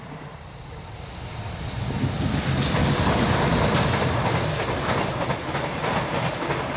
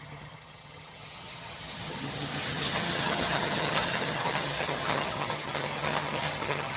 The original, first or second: first